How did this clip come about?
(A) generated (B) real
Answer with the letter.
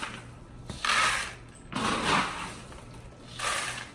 B